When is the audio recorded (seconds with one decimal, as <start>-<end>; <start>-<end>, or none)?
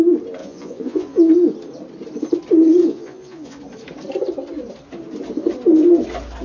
0.0-0.4; 1.3-2.8; 3.6-6.4